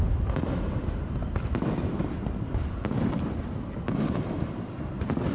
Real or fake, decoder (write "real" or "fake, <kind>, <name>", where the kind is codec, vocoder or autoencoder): real